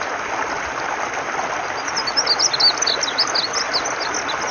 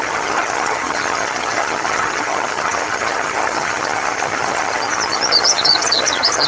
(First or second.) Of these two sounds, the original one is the first